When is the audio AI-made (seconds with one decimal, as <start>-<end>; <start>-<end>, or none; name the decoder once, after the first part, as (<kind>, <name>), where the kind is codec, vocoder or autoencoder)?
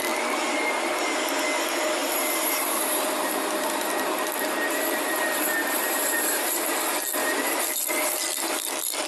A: 2.0-6.7 (vocoder, BigVGAN v2); 7.2-8.1